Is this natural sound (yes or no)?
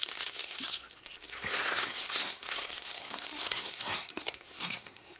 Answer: no